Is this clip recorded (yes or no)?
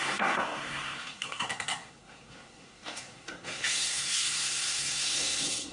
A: no